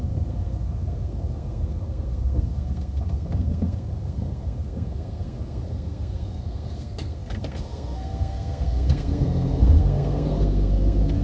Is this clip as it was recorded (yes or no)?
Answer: no